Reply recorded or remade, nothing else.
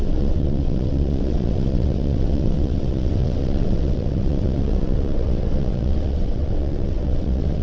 remade